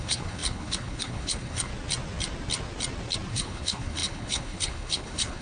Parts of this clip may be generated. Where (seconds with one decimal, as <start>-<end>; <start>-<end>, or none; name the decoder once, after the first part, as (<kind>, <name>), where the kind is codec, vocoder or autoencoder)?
0.0-1.7 (codec, HILCodec); 3.3-5.4